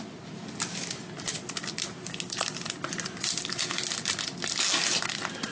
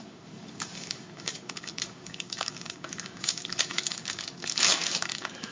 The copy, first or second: second